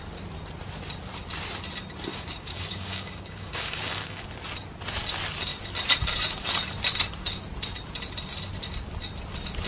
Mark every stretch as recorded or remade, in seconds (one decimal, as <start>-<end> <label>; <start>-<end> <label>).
0.0-2.1 recorded; 2.1-4.2 remade; 4.2-9.7 recorded